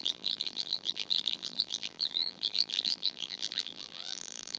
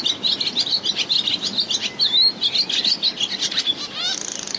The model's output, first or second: first